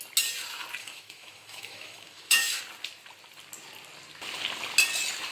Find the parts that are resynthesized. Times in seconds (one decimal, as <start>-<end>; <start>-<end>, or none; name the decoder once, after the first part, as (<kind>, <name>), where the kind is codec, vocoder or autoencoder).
0.8-2.6 (autoencoder, DAC-VAE)